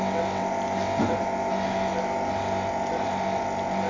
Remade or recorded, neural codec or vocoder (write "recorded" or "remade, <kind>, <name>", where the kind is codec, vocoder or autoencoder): recorded